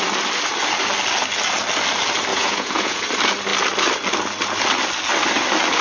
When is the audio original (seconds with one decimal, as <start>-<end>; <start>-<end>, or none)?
0.0-2.3; 3.0-5.8